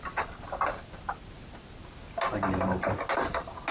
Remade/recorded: recorded